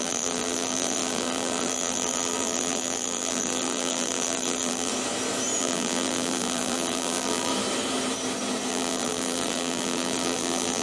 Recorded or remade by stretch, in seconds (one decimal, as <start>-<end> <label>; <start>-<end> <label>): 0.0-4.9 remade; 4.9-5.6 recorded; 5.6-7.5 remade; 7.5-8.7 recorded; 8.7-10.8 remade